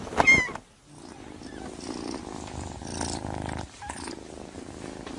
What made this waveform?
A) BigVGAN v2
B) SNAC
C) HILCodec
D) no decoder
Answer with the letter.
D